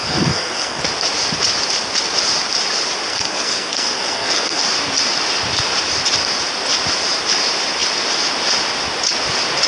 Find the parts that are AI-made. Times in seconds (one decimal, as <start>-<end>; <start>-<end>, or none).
0.0-0.8; 3.1-4.6

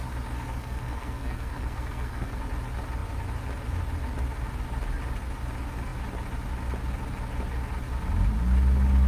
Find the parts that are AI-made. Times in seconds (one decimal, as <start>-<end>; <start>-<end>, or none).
0.6-2.4